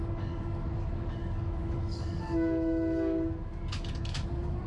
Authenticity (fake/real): fake